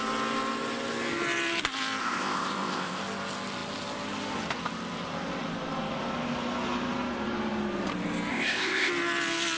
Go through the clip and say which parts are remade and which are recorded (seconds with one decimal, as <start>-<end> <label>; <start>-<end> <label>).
0.0-2.0 recorded; 2.0-3.0 remade; 3.0-8.3 recorded; 8.3-8.9 remade; 8.9-9.6 recorded